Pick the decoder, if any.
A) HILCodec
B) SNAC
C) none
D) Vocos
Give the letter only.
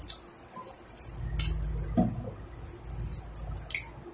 C